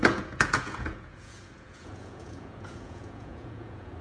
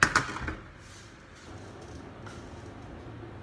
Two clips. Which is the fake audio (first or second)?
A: first